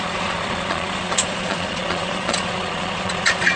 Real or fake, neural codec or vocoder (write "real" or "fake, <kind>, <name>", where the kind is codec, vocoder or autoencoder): fake, vocoder, Vocos